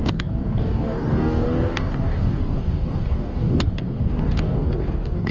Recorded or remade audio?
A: remade